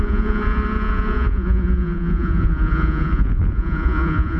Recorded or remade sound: remade